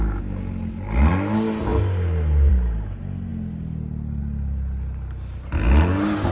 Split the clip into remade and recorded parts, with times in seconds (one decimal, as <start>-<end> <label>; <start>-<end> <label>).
0.0-6.3 recorded